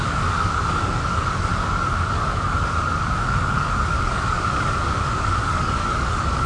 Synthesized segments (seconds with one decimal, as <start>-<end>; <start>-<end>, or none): 0.0-6.5